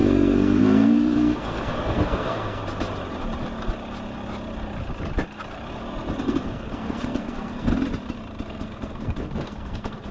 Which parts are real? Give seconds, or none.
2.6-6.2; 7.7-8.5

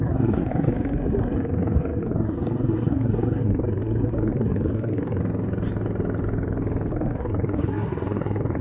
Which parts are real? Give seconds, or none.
5.2-6.9

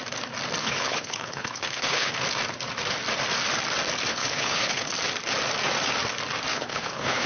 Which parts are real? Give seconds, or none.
0.0-0.6; 2.1-4.1; 4.9-6.5

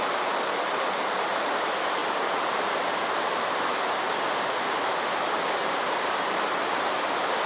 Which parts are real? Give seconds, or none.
0.0-2.0; 4.1-5.6; 6.6-7.5